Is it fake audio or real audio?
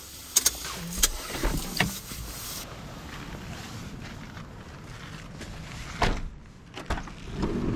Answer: real